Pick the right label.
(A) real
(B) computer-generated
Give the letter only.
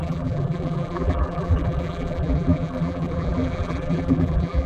B